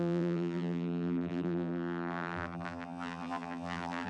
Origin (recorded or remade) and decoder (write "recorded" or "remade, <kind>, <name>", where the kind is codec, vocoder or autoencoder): remade, vocoder, BigVGAN v2